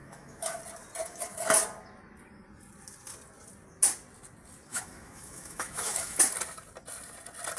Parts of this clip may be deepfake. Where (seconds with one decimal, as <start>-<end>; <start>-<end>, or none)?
0.0-0.6; 1.0-1.6; 4.7-6.2